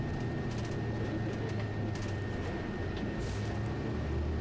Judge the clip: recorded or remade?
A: recorded